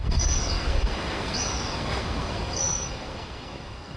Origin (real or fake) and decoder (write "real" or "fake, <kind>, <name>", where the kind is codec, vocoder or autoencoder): fake, codec, SNAC